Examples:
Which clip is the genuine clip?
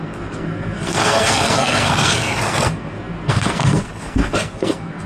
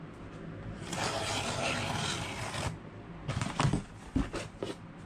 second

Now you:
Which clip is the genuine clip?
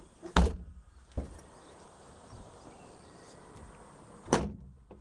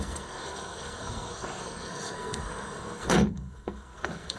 first